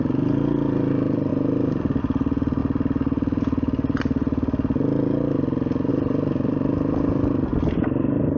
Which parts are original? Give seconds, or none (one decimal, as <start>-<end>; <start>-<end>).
1.3-2.0; 2.6-5.9; 7.5-8.4